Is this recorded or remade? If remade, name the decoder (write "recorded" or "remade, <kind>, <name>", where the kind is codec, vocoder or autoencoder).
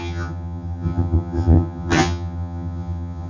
remade, vocoder, HiFi-GAN